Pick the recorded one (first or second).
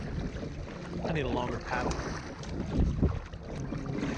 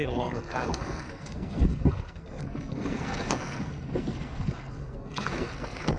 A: first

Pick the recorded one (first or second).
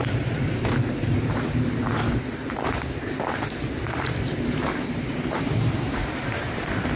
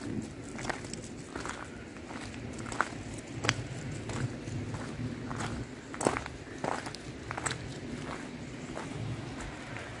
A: second